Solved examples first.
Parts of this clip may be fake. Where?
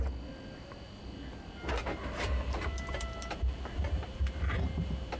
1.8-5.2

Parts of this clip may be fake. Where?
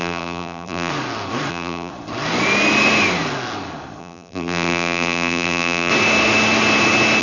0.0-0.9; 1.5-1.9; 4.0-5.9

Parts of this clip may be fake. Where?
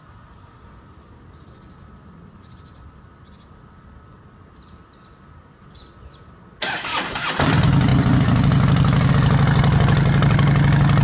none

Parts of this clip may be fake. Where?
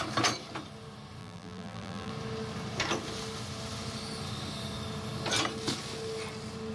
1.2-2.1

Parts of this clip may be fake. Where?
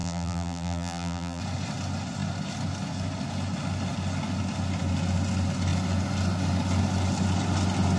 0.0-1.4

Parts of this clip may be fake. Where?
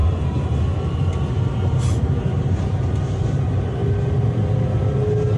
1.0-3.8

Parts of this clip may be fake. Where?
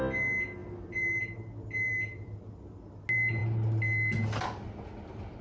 0.6-1.2; 1.9-2.5